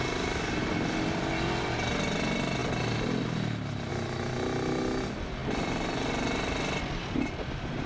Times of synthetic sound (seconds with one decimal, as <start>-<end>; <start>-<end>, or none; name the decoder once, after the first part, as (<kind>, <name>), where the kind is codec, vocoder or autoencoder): none